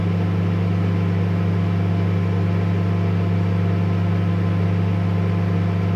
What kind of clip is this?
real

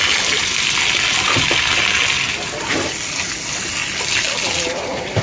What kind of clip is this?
real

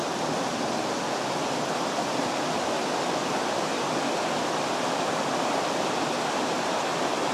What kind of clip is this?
real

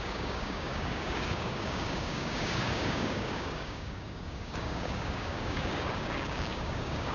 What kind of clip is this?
fake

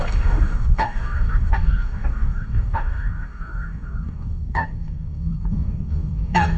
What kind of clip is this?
fake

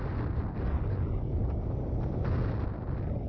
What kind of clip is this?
real